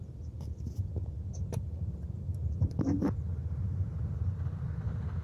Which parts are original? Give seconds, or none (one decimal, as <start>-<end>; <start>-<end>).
0.9-2.5

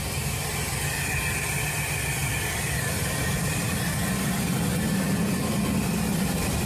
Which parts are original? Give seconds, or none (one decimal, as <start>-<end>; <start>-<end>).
0.0-6.7

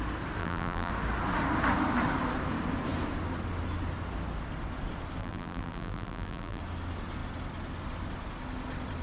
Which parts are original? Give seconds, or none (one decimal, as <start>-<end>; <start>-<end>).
0.0-0.4; 0.9-5.2; 6.6-9.0

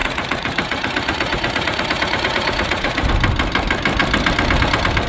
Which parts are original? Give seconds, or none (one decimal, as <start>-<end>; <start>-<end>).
3.1-5.1

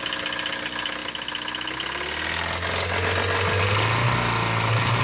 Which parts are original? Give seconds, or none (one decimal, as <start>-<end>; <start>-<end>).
0.0-5.0

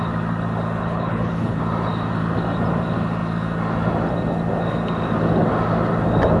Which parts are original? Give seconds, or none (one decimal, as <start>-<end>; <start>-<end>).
0.0-0.8; 1.6-6.4

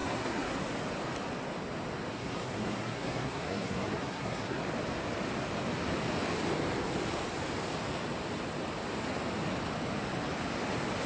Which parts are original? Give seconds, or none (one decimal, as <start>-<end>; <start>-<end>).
0.6-2.1; 4.6-11.1